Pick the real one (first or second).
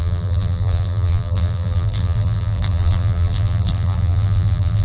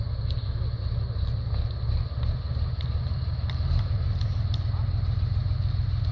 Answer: second